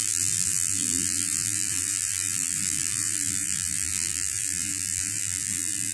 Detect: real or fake fake